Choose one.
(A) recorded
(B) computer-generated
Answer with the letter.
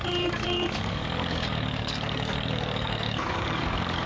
B